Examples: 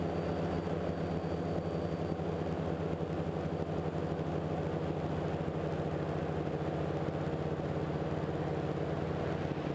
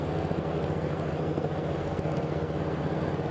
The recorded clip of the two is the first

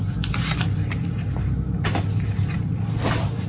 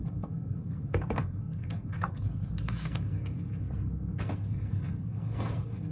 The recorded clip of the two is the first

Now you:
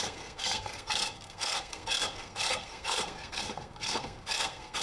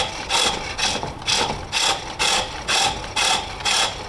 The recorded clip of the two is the second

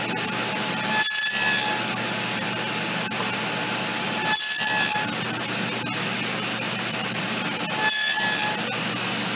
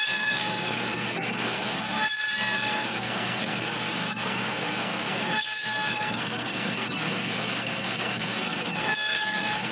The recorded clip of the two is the first